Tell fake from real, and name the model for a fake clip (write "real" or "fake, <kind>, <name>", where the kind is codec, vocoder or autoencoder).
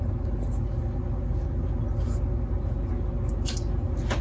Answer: real